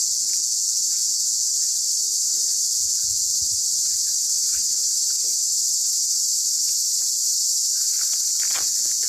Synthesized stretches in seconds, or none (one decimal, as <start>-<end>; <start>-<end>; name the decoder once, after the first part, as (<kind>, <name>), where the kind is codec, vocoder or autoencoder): 0.0-1.5 (vocoder, Vocos); 2.7-3.3; 8.5-9.1